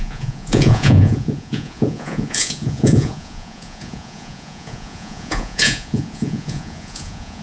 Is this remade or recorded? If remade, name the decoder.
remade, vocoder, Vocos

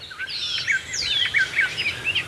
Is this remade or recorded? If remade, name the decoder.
recorded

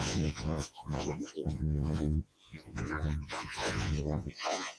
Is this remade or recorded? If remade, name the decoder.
remade, vocoder, Vocos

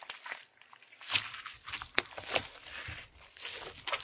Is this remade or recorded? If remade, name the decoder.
recorded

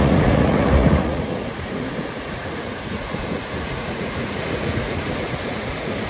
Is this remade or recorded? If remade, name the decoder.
remade, vocoder, Vocos